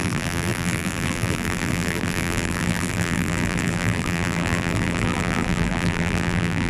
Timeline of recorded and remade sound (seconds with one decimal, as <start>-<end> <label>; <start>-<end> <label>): 0.0-6.7 remade